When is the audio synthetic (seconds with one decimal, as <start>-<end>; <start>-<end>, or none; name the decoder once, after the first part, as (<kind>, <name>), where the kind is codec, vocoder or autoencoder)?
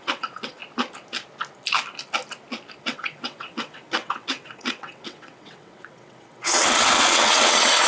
0.0-0.6 (vocoder, WaveNeXt); 2.8-7.9